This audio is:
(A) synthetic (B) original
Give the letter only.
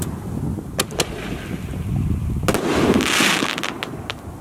B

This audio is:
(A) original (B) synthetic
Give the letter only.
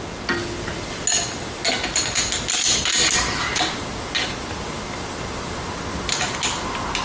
A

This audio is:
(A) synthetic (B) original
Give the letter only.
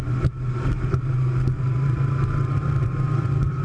A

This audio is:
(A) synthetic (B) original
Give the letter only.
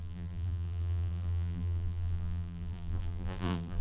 A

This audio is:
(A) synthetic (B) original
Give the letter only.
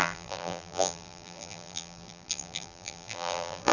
A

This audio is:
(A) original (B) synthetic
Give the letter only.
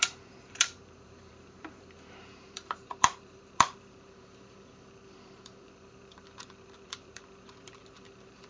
B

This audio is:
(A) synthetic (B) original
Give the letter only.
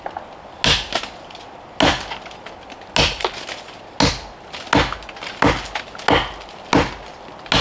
B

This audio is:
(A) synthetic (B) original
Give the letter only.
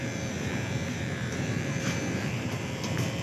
A